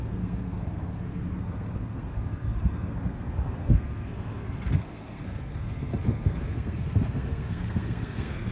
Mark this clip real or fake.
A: fake